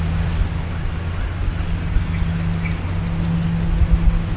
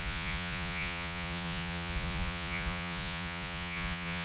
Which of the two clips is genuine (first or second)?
first